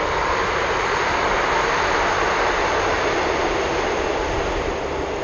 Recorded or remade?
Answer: recorded